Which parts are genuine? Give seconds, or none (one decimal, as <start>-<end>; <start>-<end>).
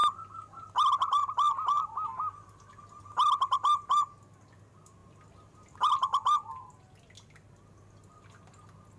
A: 0.0-9.0